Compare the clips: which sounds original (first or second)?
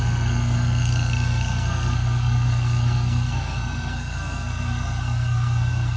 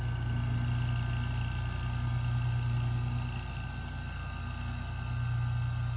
second